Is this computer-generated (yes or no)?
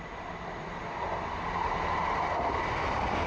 no